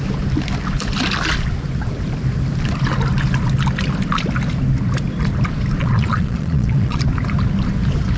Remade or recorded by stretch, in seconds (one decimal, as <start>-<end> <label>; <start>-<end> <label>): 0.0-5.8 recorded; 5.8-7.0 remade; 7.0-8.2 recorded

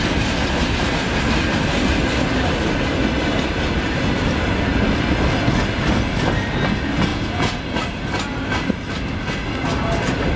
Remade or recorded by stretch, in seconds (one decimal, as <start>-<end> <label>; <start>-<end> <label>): 0.0-7.1 recorded; 7.1-7.6 remade; 7.6-10.4 recorded

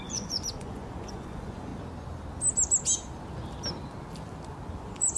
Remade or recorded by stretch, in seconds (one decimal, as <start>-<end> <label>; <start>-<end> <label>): 0.0-1.7 remade; 1.7-4.8 recorded; 4.8-5.2 remade